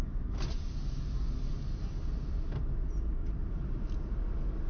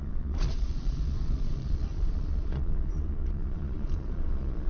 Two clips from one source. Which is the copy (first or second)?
second